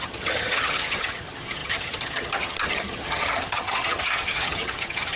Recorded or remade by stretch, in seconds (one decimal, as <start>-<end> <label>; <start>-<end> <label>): 0.0-5.2 remade